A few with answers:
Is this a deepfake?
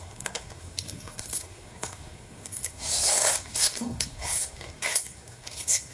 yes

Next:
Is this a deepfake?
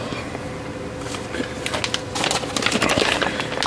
no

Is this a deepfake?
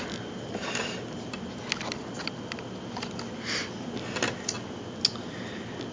no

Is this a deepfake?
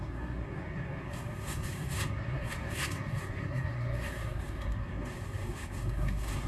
yes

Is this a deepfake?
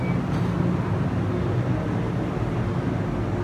no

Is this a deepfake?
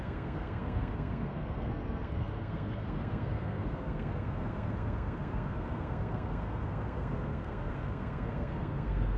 yes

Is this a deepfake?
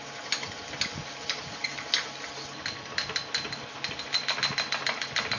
no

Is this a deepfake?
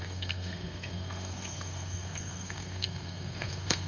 yes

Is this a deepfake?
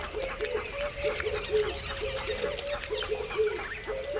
no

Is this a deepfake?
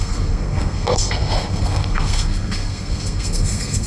yes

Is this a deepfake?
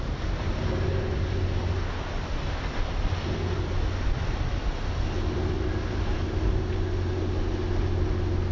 no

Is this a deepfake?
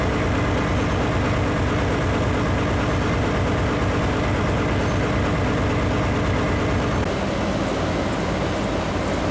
no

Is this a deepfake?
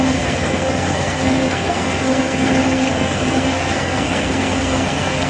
yes